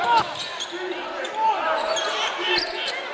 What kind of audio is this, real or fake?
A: fake